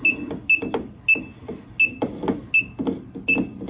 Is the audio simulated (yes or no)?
no